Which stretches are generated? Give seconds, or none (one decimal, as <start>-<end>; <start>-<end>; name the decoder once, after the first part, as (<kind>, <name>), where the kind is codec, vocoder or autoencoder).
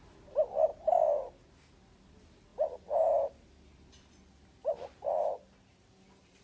2.5-6.4 (vocoder, BigVGAN v2)